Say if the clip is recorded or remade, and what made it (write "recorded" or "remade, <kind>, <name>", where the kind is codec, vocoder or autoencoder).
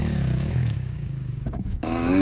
remade, codec, DAC